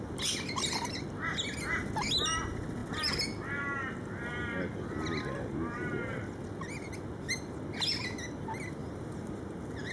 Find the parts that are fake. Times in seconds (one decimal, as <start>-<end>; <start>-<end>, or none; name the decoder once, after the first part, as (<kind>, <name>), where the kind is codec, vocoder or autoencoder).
8.8-9.4 (vocoder, BigVGAN v2)